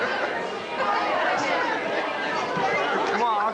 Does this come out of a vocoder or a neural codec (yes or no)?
no